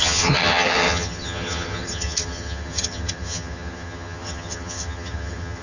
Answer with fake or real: fake